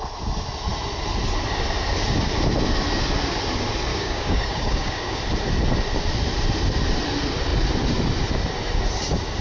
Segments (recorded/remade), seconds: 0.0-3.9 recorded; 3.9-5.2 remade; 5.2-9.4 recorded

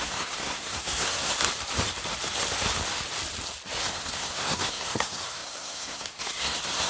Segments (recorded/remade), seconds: 0.0-1.3 remade; 1.3-3.9 recorded; 3.9-6.9 remade

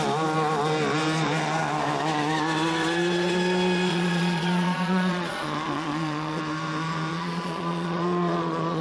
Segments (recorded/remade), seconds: 0.0-3.9 recorded; 3.9-6.4 remade; 6.4-7.1 recorded; 7.1-8.8 remade

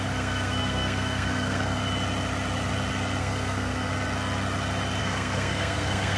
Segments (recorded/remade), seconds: 0.0-1.8 remade; 1.8-3.2 recorded; 3.2-3.9 remade; 3.9-5.0 recorded; 5.0-6.2 remade